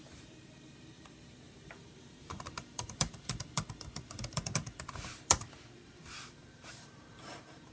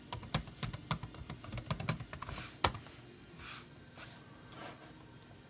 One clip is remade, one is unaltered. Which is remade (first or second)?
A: first